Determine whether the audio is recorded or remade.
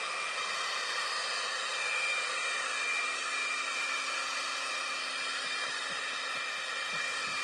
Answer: recorded